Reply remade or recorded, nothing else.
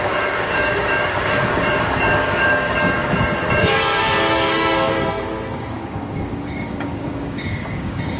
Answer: remade